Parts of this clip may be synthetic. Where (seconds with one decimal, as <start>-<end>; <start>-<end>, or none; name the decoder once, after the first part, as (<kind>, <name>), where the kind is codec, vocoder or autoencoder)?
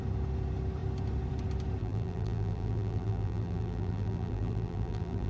1.8-5.3 (vocoder, BigVGAN v2)